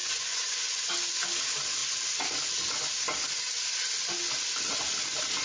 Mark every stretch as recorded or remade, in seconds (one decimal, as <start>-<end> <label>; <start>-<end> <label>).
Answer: 0.0-0.9 remade; 0.9-5.4 recorded